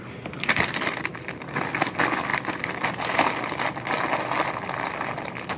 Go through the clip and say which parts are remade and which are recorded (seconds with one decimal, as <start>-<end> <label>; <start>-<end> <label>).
0.0-5.6 recorded